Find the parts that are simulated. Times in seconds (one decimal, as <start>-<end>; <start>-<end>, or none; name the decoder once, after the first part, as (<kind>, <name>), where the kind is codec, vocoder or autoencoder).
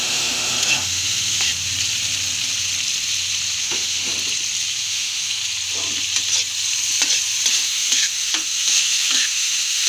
0.0-1.5 (autoencoder, DAC-VAE); 3.6-4.1; 4.8-5.4; 7.5-9.9